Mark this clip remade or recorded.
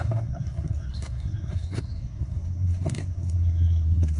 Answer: remade